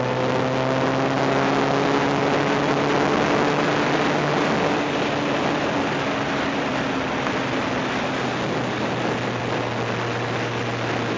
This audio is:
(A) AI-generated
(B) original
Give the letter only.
B